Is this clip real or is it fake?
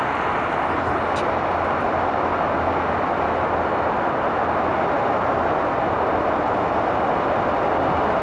real